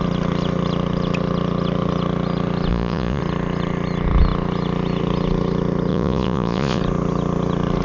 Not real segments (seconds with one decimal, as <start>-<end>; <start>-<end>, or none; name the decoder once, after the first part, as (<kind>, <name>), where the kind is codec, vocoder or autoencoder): 2.7-3.2 (vocoder, Vocos); 5.9-6.8